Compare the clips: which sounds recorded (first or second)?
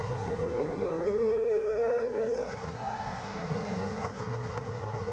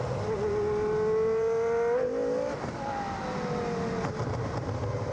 second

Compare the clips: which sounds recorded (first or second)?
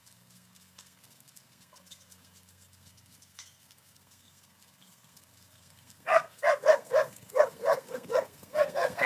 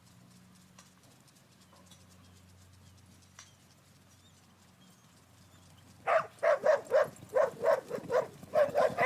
second